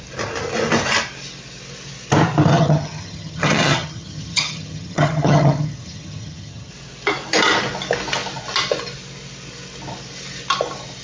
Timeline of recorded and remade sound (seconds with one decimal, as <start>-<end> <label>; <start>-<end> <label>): 0.0-2.5 recorded; 2.5-6.7 remade; 6.7-11.0 recorded